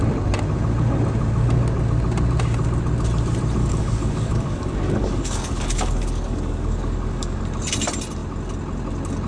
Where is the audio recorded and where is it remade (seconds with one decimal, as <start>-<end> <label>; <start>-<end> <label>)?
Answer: 0.0-3.6 recorded; 3.6-7.4 remade; 7.4-9.3 recorded